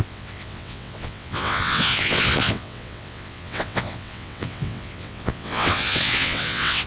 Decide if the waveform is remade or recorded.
remade